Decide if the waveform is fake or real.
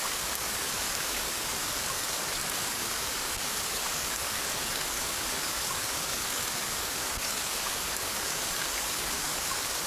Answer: fake